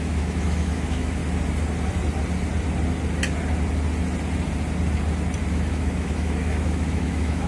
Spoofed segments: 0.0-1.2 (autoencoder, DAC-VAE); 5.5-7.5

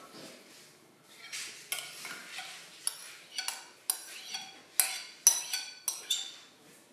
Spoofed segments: none

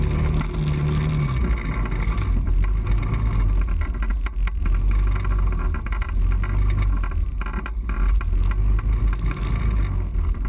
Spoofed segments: none

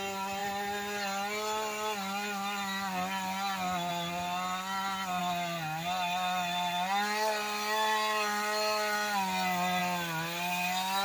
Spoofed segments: none